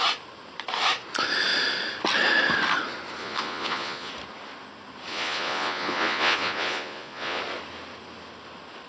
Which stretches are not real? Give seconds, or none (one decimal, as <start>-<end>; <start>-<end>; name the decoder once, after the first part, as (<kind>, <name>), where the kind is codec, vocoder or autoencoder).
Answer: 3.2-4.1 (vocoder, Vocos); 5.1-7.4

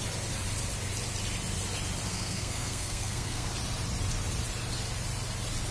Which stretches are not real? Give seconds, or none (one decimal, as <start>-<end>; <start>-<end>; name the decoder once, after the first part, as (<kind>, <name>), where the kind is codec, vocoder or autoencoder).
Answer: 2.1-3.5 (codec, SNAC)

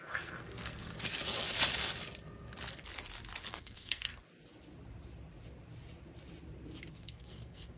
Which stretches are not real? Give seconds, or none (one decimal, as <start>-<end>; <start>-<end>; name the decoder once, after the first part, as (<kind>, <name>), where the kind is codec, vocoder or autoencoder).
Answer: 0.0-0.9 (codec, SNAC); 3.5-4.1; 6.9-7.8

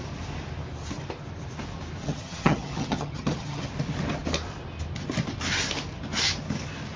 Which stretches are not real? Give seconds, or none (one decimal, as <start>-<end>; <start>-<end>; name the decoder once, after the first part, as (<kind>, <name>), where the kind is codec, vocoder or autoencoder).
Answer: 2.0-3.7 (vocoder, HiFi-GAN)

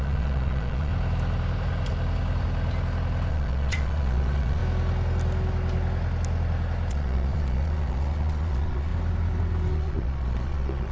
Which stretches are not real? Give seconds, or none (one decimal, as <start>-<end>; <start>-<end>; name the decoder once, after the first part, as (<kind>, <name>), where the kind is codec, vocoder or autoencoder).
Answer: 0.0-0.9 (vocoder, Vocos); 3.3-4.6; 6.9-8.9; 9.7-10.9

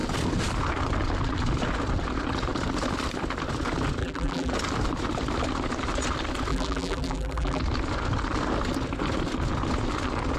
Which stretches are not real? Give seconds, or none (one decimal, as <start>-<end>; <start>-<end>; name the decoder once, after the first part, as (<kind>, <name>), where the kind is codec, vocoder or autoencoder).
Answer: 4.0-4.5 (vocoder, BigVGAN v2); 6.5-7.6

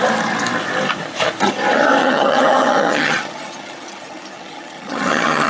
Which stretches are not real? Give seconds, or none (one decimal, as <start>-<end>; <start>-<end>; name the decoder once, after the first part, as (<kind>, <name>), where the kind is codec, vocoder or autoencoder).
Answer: 2.0-5.5 (vocoder, HiFi-GAN)

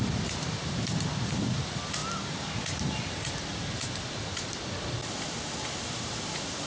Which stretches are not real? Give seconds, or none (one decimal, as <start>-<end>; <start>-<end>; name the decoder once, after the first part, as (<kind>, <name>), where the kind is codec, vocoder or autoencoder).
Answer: none